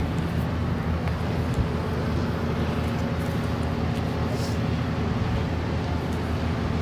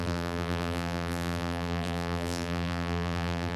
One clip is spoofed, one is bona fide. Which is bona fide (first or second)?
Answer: first